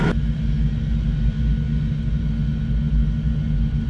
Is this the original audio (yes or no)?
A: yes